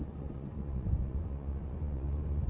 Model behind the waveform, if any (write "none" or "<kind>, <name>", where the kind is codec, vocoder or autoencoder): vocoder, Vocos